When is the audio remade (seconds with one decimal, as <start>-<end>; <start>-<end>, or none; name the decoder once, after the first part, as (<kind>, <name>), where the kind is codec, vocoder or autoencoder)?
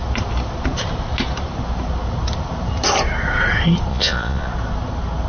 3.9-4.5 (vocoder, Vocos)